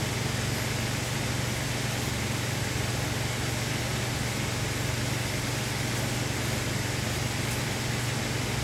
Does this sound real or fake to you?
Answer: real